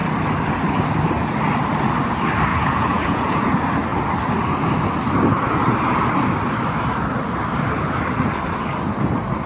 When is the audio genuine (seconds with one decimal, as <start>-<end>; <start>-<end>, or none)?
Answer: 0.0-2.5; 3.5-9.5